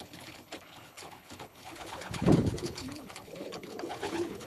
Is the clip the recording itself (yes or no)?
no